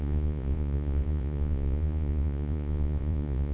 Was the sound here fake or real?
fake